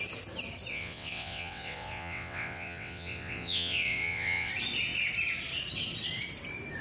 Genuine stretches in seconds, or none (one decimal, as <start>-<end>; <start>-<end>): 0.0-0.7; 4.5-6.8

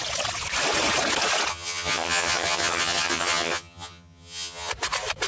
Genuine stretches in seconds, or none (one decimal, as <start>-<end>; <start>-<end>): 0.0-1.5; 4.7-5.3

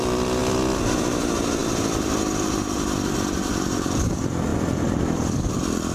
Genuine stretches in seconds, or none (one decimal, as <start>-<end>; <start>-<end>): 0.4-1.0; 4.5-5.0

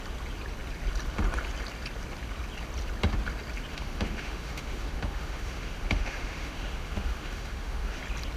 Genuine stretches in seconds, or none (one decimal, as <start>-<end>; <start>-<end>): 0.0-3.7; 8.0-8.4

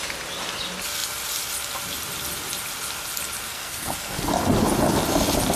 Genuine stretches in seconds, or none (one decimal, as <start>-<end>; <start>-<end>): 0.0-3.5; 4.2-5.6